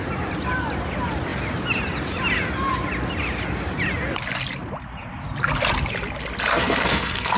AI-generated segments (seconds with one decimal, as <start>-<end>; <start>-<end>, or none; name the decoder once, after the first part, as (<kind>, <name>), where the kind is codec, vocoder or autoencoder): 6.5-7.4 (codec, SNAC)

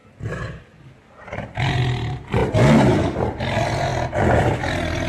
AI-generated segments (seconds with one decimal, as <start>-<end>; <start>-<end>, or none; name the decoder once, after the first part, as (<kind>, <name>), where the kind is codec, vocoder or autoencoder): 0.0-0.6 (vocoder, BigVGAN v2); 1.2-1.8

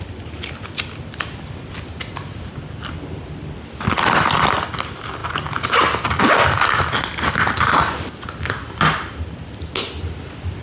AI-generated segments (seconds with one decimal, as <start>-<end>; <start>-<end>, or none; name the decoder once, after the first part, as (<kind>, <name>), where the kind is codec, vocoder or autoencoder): none

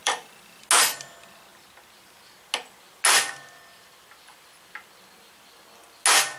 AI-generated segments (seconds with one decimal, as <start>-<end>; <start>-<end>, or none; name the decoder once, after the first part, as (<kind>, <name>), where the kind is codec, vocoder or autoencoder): 0.0-0.6 (vocoder, BigVGAN v2)

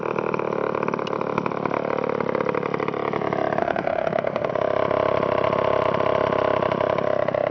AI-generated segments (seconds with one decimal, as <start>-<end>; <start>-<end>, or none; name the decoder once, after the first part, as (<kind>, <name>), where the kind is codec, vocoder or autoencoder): 3.6-4.5 (autoencoder, DAC-VAE)